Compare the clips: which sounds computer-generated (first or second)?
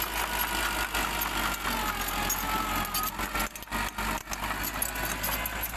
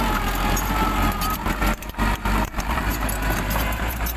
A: second